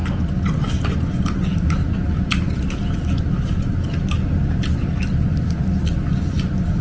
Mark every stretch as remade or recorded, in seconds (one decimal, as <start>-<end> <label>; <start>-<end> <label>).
0.0-6.8 recorded